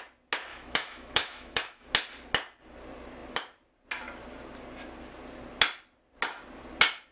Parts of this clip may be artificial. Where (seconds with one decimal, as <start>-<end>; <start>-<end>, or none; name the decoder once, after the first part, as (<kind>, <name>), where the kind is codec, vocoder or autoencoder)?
0.5-1.9 (autoencoder, DAC-VAE)